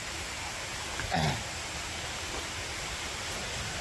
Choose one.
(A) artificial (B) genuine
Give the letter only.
B